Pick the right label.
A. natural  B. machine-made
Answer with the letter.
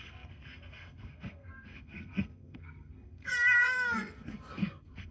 B